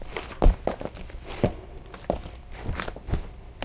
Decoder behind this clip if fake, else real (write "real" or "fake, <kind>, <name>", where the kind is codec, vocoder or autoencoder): real